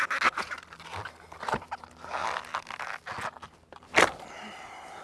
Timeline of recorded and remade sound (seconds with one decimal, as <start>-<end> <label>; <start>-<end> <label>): 0.0-5.0 recorded